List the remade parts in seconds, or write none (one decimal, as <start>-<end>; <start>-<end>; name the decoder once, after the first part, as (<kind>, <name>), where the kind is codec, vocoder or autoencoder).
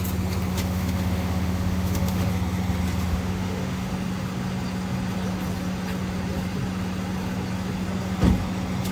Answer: 0.5-2.3 (autoencoder, DAC-VAE); 3.1-3.9